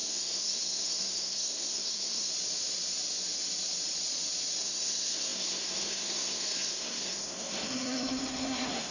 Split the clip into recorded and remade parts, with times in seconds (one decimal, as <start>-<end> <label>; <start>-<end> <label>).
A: 0.0-2.3 remade; 2.3-4.6 recorded; 4.6-8.9 remade